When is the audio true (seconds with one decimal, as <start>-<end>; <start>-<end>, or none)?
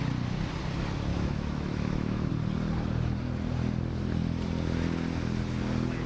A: 0.0-1.1; 2.3-6.1